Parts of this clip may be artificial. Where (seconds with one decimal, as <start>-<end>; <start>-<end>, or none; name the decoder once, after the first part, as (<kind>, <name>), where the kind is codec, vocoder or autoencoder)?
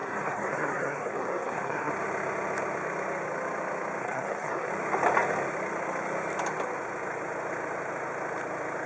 0.0-1.9 (codec, SNAC); 4.0-4.7